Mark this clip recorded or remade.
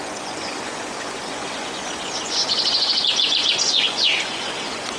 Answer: remade